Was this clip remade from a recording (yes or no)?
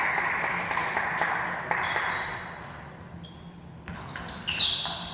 no